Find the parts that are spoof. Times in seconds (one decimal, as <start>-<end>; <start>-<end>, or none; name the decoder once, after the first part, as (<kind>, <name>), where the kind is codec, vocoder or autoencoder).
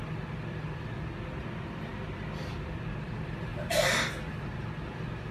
3.5-4.1 (vocoder, BigVGAN v2)